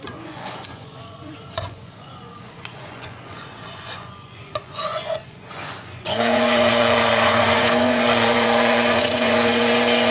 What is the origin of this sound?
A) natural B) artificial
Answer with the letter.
B